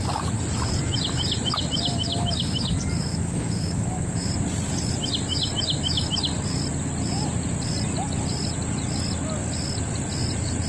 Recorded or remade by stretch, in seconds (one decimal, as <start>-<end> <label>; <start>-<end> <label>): 0.0-3.1 recorded; 3.1-4.3 remade; 4.3-10.7 recorded